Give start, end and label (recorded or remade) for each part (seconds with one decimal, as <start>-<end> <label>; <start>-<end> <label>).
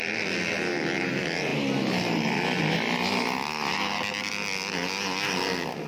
0.0-5.9 recorded